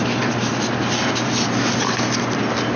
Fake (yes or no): no